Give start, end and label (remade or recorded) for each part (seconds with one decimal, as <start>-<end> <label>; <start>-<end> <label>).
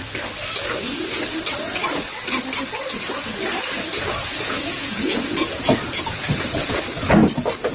0.0-3.9 recorded; 3.9-6.8 remade; 6.8-7.7 recorded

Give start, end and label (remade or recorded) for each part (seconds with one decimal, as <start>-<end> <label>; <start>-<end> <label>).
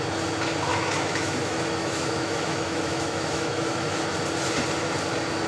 0.0-0.7 recorded; 0.7-4.0 remade; 4.0-5.5 recorded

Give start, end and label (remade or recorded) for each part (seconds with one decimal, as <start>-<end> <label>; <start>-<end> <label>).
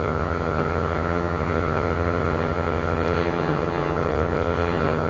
0.0-5.1 remade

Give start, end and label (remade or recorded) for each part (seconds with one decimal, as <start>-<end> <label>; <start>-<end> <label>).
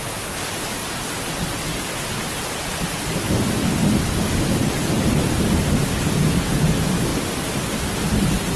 0.0-8.6 recorded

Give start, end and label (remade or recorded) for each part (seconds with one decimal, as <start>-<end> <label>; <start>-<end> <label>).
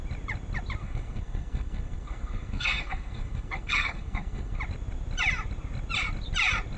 0.0-0.8 recorded; 0.8-4.6 remade; 4.6-6.8 recorded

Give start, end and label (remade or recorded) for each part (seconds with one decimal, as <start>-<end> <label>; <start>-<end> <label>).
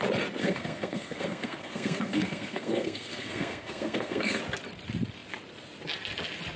0.0-0.4 recorded; 0.4-4.4 remade; 4.4-6.6 recorded